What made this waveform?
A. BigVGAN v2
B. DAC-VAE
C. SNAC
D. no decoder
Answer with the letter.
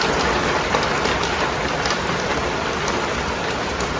D